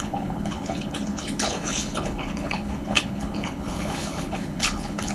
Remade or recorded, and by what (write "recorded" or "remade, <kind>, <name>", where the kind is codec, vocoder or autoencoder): remade, codec, HILCodec